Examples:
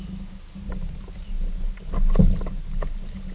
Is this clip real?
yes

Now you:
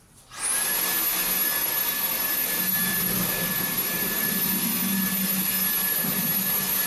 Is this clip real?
yes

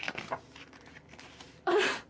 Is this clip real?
no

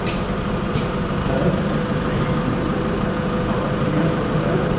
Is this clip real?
no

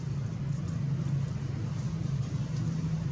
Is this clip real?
yes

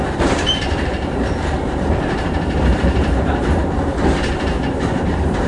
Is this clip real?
no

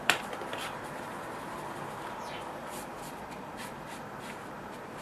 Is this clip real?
no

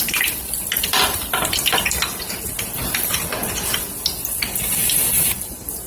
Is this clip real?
yes